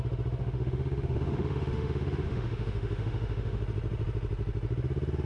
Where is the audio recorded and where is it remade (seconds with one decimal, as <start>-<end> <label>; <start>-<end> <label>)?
0.0-0.4 recorded; 0.4-3.6 remade; 3.6-5.3 recorded